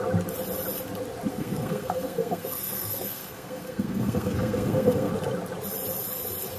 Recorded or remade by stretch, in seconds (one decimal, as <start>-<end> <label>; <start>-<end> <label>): 0.0-1.3 recorded; 1.3-5.1 remade; 5.1-6.6 recorded